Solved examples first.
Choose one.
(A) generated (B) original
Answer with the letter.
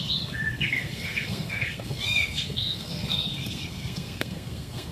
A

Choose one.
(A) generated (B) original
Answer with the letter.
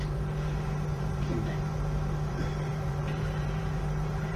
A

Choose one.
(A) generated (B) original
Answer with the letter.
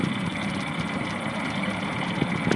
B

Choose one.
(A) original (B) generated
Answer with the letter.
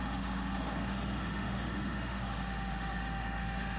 B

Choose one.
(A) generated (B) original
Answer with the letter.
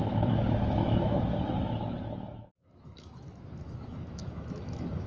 A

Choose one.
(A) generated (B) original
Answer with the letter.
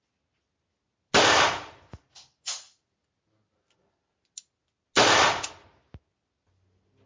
B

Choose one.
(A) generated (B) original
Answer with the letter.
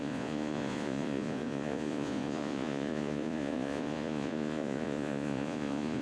A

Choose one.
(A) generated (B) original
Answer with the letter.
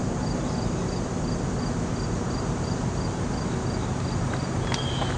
B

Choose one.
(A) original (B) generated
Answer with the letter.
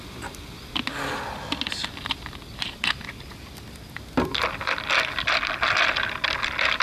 A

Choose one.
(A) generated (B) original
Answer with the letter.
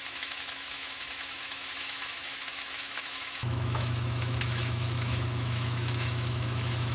A